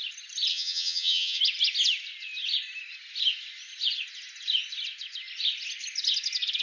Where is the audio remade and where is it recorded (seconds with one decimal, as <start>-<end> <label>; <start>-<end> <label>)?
0.0-0.5 recorded; 0.5-1.4 remade; 1.4-6.6 recorded